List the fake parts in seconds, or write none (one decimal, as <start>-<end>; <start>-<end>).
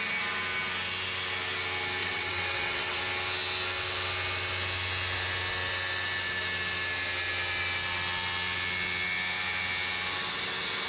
2.0-3.0